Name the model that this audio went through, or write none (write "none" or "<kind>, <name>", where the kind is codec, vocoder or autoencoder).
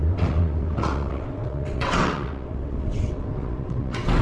vocoder, WaveNeXt